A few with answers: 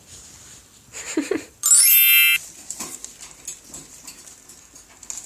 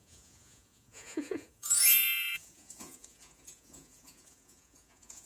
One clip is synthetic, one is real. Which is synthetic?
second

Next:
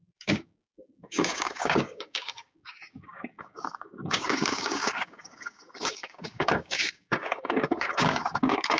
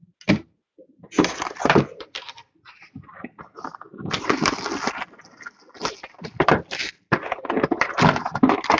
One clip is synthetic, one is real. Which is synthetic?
first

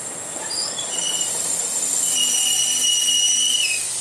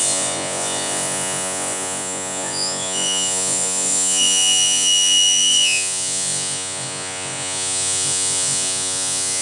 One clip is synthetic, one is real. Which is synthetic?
second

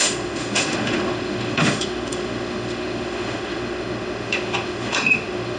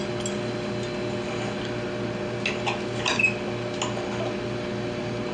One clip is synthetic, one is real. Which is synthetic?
first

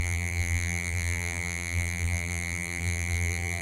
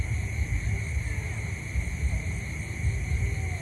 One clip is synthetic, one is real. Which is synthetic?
first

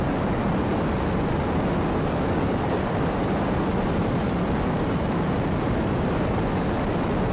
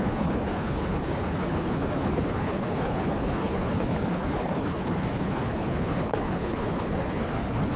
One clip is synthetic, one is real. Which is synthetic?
second